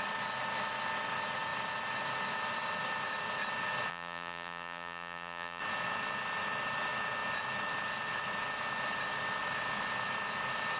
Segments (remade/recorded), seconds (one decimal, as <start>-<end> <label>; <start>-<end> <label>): 0.0-3.9 recorded; 3.9-5.6 remade; 5.6-10.8 recorded